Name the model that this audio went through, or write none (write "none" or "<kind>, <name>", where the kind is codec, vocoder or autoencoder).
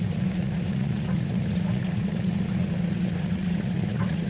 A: vocoder, Vocos